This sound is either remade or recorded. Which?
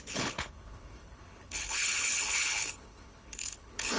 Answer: remade